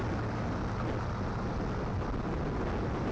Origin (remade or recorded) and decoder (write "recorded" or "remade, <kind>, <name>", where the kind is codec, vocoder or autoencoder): recorded